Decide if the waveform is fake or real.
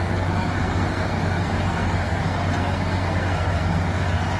fake